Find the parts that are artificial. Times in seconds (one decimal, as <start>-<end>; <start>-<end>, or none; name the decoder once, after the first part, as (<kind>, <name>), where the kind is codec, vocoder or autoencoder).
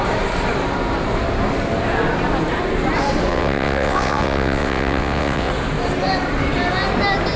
3.3-5.5 (vocoder, WaveNeXt)